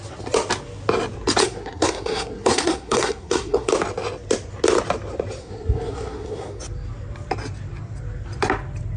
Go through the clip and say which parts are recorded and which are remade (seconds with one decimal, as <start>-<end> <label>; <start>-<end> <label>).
0.0-1.4 recorded; 1.4-3.7 remade; 3.7-5.4 recorded; 5.4-6.6 remade; 6.6-9.0 recorded